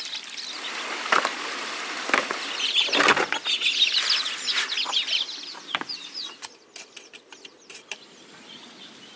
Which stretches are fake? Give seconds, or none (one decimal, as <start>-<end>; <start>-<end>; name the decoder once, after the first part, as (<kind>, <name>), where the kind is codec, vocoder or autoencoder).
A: none